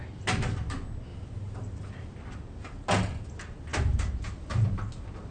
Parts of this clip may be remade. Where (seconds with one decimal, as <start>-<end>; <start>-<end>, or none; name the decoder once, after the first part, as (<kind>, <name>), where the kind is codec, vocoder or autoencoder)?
1.1-2.0 (vocoder, BigVGAN v2); 3.7-4.6